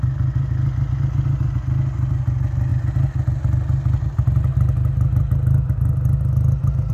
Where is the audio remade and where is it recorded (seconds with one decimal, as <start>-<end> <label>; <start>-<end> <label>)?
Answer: 0.0-6.9 recorded